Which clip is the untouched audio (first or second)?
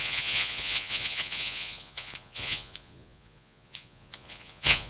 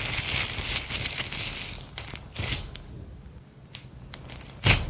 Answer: second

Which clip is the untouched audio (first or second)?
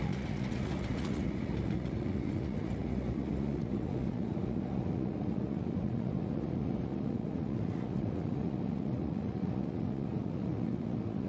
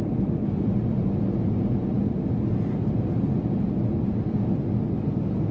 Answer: second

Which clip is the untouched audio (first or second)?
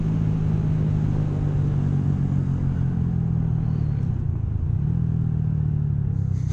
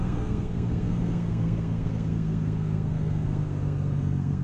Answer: first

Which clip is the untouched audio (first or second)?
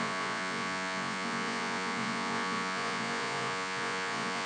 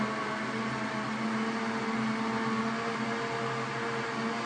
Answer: second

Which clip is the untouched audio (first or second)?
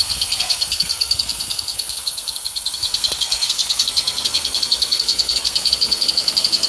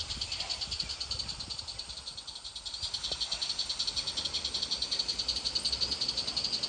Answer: second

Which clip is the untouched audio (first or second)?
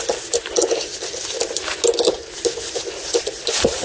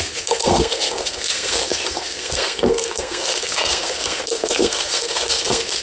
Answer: first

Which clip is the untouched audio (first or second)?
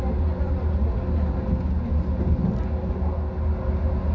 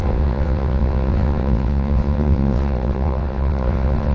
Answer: first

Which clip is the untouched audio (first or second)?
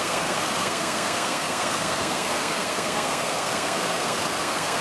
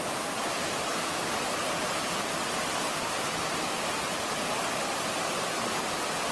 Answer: second